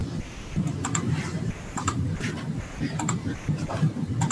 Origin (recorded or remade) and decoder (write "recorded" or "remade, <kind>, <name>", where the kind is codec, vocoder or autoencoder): remade, vocoder, BigVGAN v2